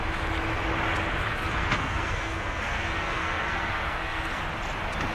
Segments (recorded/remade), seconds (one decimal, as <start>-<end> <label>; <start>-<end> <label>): 0.0-1.3 recorded; 1.3-4.4 remade; 4.4-5.1 recorded